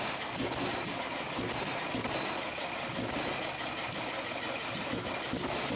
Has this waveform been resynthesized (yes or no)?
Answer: no